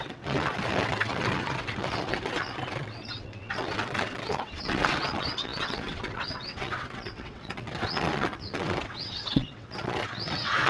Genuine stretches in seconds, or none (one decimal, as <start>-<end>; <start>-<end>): none